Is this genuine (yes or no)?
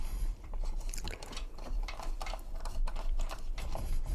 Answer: no